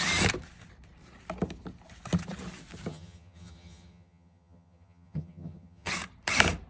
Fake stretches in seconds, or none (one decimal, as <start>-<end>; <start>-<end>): 2.9-5.9